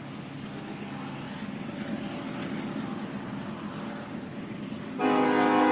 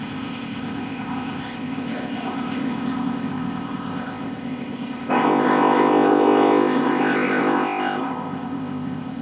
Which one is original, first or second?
first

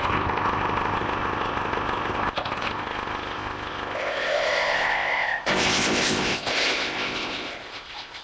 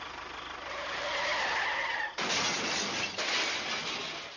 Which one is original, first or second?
second